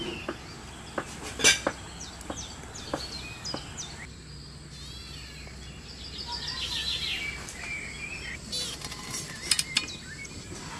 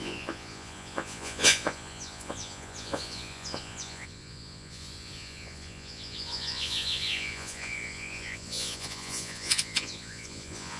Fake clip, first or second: second